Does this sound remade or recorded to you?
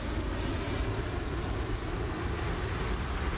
recorded